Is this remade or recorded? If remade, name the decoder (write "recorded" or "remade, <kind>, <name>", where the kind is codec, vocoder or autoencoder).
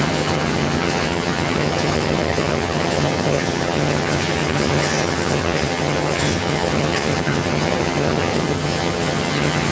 remade, vocoder, HiFi-GAN